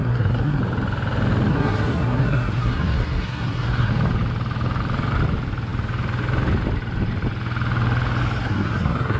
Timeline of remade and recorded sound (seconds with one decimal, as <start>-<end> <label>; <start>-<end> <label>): 0.0-0.6 remade; 0.6-1.5 recorded; 1.5-3.9 remade; 3.9-8.4 recorded; 8.4-9.2 remade